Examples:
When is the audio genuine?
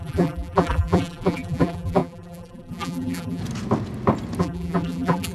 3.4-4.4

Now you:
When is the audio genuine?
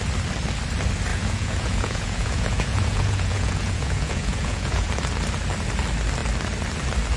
0.0-1.1; 4.9-7.2